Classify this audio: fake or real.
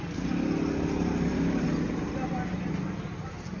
real